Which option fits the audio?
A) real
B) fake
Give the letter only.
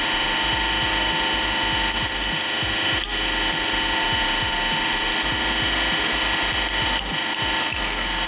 A